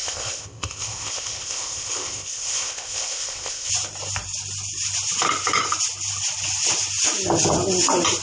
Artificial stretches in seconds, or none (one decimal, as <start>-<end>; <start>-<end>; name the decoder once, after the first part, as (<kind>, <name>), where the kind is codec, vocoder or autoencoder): 0.0-3.7 (codec, ZipCodec)

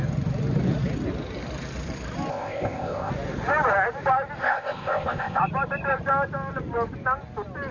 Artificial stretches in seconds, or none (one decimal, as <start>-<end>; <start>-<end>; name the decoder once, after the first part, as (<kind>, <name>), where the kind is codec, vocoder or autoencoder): 2.3-3.1 (codec, ZipCodec); 4.4-5.4